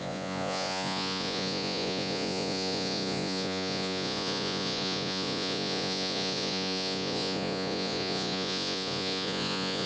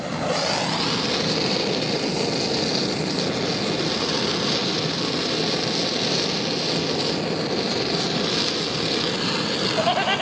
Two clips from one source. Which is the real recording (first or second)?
second